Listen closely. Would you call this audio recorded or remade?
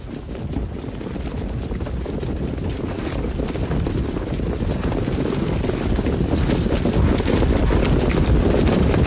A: recorded